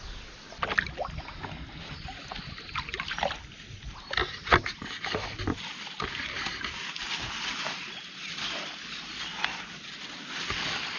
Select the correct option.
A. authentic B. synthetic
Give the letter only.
A